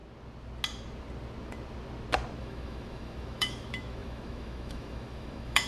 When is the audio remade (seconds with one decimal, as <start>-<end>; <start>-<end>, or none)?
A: 2.4-5.7